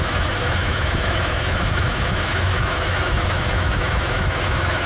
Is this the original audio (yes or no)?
no